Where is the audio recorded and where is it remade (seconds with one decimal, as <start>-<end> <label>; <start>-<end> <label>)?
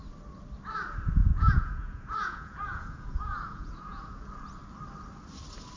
0.0-1.2 recorded; 1.2-4.3 remade; 4.3-5.8 recorded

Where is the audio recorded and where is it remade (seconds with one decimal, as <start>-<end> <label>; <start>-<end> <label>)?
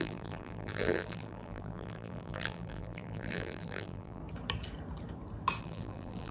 0.0-4.2 remade; 4.2-5.6 recorded; 5.6-6.3 remade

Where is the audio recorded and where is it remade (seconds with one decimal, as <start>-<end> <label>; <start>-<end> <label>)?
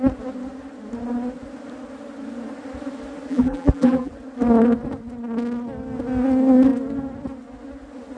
0.0-3.3 recorded; 3.3-4.1 remade; 4.1-8.2 recorded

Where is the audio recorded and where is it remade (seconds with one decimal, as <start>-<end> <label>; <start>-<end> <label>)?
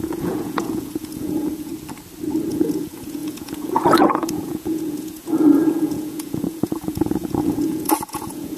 0.0-1.7 remade; 1.7-2.5 recorded; 2.5-8.6 remade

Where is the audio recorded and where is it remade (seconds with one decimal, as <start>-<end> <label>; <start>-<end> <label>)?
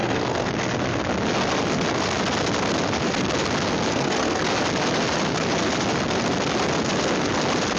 0.0-0.5 remade; 0.5-3.9 recorded; 3.9-4.4 remade; 4.4-7.8 recorded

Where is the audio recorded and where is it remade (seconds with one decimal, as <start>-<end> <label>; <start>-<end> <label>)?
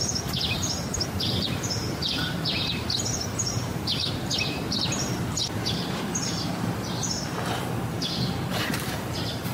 0.0-6.5 remade; 6.5-7.9 recorded; 7.9-9.5 remade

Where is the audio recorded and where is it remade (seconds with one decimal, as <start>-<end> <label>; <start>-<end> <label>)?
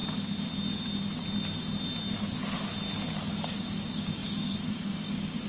0.0-3.3 recorded; 3.3-5.5 remade